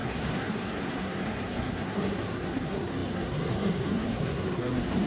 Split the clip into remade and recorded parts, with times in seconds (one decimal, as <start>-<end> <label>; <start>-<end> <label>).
0.0-5.1 remade